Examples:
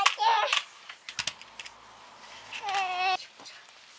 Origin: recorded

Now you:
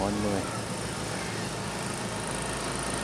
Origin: recorded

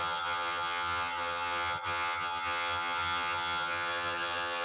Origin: remade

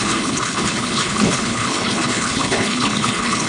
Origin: remade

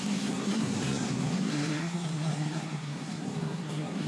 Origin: remade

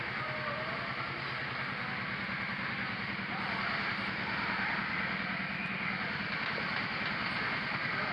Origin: recorded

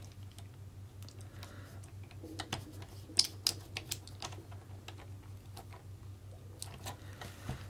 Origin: recorded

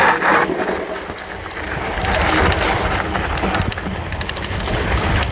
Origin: recorded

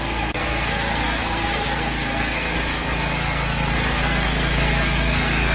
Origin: remade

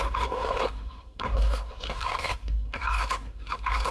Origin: remade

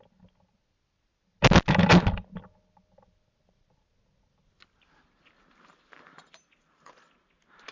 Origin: recorded